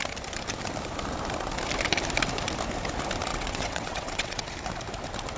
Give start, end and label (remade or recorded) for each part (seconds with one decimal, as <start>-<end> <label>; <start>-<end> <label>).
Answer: 0.0-3.3 recorded; 3.3-4.5 remade; 4.5-5.4 recorded